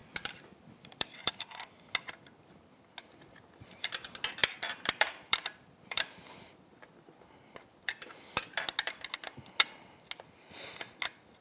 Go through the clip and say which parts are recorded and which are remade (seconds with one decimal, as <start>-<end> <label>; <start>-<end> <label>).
0.0-1.3 remade; 1.3-4.4 recorded; 4.4-6.4 remade; 6.4-11.4 recorded